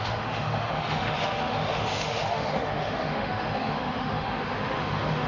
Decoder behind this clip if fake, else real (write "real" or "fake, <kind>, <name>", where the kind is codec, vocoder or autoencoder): fake, autoencoder, DAC-VAE